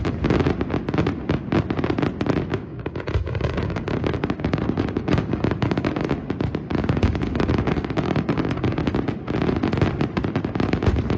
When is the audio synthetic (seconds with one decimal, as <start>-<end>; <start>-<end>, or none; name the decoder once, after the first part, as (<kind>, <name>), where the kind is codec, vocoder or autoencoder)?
2.5-6.1 (codec, DAC); 6.7-8.9